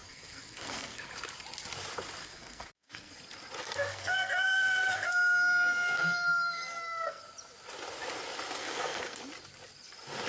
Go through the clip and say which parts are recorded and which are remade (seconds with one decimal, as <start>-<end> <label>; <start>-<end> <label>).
0.0-1.1 remade; 1.1-2.2 recorded; 2.2-3.1 remade; 3.1-3.6 recorded; 3.6-7.2 remade; 7.2-8.6 recorded; 8.6-9.2 remade; 9.2-10.3 recorded